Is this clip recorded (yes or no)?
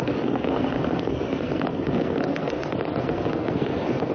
no